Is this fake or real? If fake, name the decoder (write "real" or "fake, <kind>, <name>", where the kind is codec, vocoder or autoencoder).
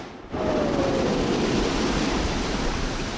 fake, vocoder, BigVGAN v2